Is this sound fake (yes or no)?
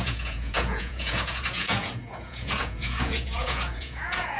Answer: yes